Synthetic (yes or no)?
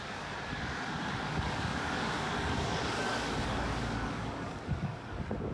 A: yes